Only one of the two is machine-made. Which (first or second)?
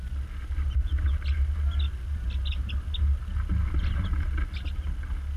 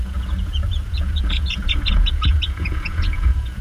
second